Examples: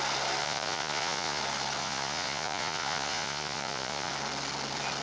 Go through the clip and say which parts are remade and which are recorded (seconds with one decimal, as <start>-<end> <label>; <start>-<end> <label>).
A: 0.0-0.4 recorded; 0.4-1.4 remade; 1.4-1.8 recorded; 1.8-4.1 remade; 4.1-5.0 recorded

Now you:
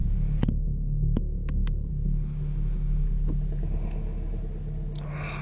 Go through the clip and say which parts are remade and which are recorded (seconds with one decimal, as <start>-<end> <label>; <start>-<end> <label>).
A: 0.0-5.4 recorded

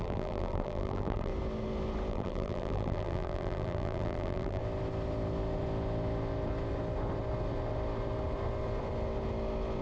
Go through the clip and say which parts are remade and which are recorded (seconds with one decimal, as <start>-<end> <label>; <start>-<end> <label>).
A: 0.0-1.3 remade; 1.3-2.1 recorded; 2.1-4.6 remade; 4.6-9.8 recorded

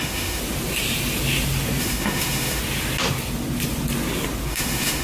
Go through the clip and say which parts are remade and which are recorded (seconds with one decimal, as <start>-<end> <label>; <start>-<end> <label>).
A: 0.0-0.4 remade; 0.4-1.8 recorded; 1.8-2.6 remade; 2.6-4.5 recorded; 4.5-5.0 remade